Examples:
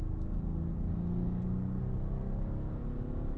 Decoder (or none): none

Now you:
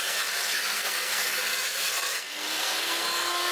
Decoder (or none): codec, SNAC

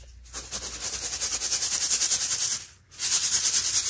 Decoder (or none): none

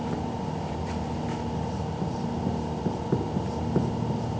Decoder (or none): none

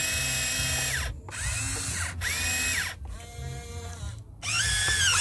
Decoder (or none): none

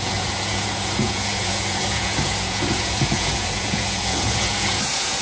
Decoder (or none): vocoder, Vocos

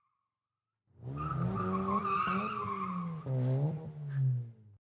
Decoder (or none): none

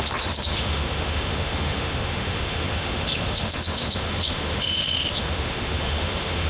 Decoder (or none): autoencoder, DAC-VAE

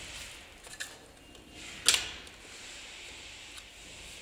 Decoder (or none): none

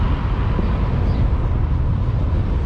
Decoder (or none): none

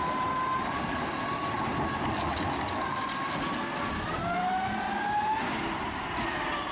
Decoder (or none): none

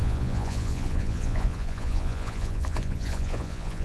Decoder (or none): vocoder, Vocos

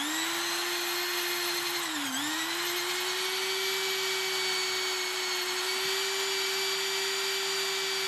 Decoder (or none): none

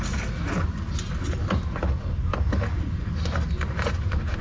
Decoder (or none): none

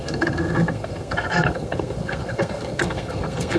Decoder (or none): codec, SNAC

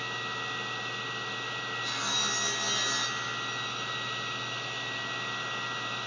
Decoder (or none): none